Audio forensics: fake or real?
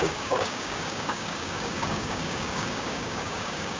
fake